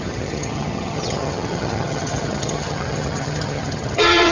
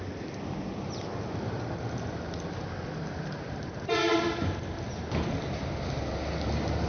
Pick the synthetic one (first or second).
first